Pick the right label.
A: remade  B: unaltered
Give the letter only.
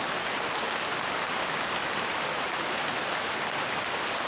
B